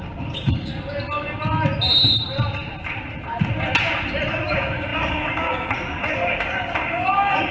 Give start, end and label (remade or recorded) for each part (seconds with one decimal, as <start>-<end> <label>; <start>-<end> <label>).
0.0-0.7 remade; 0.7-4.3 recorded; 4.3-7.5 remade